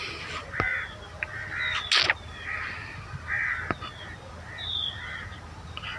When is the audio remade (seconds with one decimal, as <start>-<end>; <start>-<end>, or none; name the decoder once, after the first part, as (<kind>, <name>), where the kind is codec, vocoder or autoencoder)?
none